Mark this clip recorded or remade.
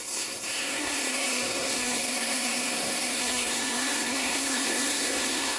remade